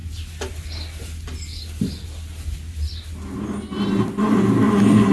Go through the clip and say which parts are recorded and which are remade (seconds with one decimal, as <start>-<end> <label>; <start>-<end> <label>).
0.0-5.1 recorded